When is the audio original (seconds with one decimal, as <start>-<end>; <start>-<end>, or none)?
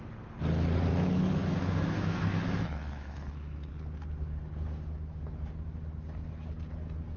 0.0-0.9; 3.7-7.2